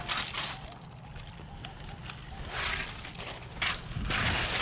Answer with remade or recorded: recorded